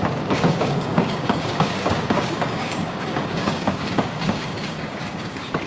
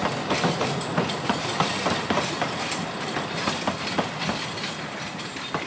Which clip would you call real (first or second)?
second